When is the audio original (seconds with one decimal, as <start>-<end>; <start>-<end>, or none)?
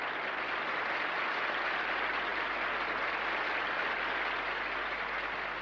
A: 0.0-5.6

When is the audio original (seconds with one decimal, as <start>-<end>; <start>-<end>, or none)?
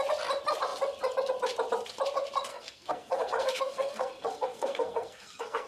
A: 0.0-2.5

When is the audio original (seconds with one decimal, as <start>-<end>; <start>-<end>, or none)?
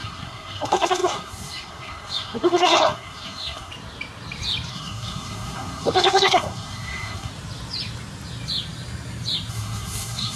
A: 3.7-4.7; 7.3-9.5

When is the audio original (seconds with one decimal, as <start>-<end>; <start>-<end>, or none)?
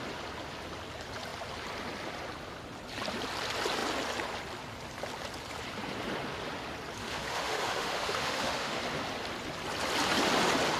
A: 0.0-7.0; 8.8-10.8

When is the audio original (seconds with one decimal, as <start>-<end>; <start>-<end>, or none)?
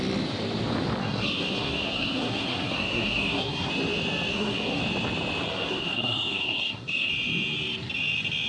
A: 0.0-1.0; 3.7-4.3; 4.8-5.5; 7.1-8.5